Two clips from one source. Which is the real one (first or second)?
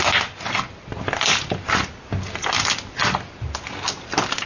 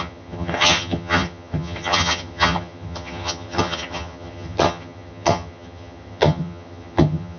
first